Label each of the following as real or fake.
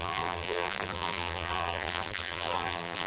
fake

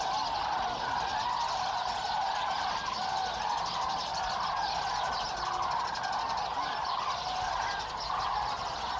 real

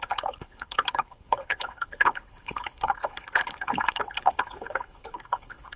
fake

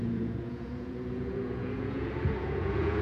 fake